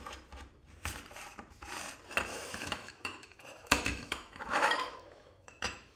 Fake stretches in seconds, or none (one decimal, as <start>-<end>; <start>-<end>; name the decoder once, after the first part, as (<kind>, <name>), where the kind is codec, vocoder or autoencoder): 2.3-6.0 (autoencoder, DAC-VAE)

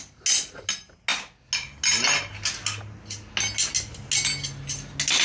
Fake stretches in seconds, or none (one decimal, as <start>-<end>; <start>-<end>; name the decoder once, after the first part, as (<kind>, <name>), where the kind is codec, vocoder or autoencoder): none

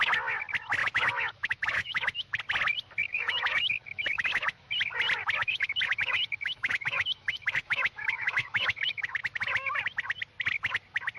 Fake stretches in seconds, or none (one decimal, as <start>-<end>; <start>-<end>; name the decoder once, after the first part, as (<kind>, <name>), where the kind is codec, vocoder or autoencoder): 0.8-2.4 (autoencoder, DAC-VAE); 3.0-4.7; 5.4-9.2

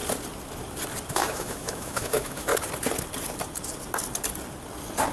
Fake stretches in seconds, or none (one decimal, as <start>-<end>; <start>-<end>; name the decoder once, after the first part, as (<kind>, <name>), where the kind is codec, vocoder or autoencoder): 1.1-2.5 (autoencoder, DAC-VAE)

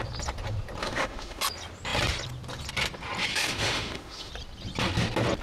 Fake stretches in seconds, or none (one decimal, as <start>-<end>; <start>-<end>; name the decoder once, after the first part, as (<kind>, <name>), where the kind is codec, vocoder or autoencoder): 0.8-1.4 (autoencoder, DAC-VAE); 3.3-4.3